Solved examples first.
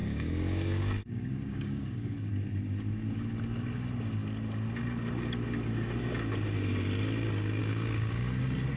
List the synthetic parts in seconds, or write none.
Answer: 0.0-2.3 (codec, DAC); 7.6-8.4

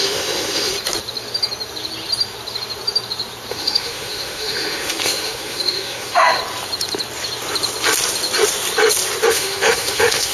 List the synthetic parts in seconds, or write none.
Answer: 0.0-0.7 (autoencoder, DAC-VAE); 3.5-6.4; 9.3-10.3

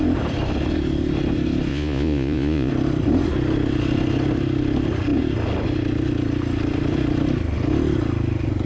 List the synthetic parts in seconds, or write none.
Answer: 1.7-2.7 (vocoder, Vocos)

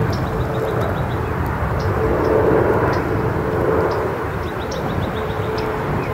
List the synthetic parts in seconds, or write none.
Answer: none

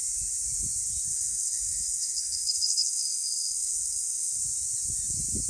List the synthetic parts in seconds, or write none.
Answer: 1.1-4.4 (codec, SNAC)

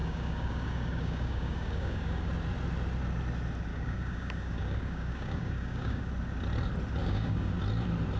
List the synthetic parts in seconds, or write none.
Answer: 0.0-2.3 (codec, DAC); 3.7-6.1; 7.0-7.5

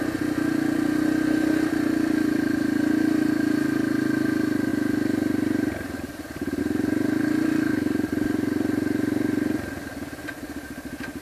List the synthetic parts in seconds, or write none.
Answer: none

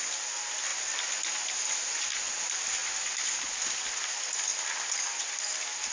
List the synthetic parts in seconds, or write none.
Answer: none